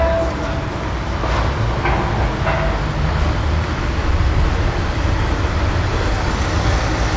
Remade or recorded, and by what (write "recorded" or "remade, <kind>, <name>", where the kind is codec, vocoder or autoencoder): recorded